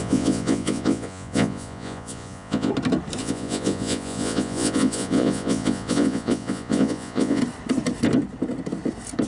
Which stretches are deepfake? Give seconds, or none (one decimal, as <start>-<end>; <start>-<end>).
0.0-2.7; 3.2-7.4